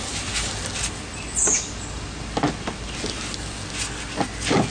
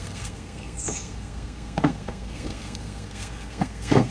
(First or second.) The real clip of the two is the first